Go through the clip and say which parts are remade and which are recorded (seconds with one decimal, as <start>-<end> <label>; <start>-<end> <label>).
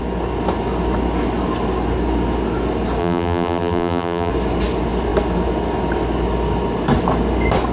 0.0-3.0 recorded; 3.0-4.3 remade; 4.3-7.7 recorded